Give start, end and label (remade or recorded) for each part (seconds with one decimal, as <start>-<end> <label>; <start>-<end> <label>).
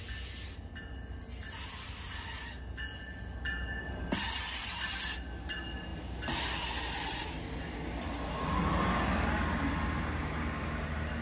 0.0-11.2 recorded